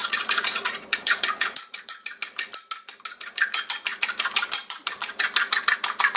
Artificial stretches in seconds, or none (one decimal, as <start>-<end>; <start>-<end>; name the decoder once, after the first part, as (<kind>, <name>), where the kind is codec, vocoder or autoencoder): 0.0-1.8 (vocoder, Vocos)